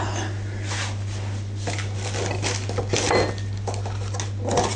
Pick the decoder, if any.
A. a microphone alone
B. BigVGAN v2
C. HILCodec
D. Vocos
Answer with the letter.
A